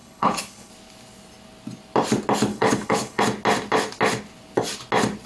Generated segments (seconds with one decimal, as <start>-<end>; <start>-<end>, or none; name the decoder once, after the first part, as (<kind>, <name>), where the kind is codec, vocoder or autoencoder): 0.0-0.7 (codec, HILCodec); 2.5-3.2